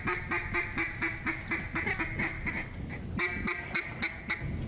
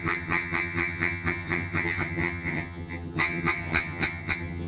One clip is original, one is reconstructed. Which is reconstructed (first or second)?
second